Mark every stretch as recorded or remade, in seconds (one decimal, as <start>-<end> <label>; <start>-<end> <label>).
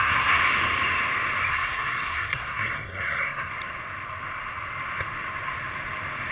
0.0-0.4 remade; 0.4-1.5 recorded; 1.5-3.5 remade; 3.5-6.3 recorded